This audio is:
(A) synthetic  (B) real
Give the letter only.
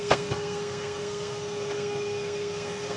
A